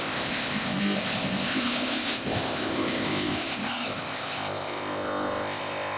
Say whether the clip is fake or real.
fake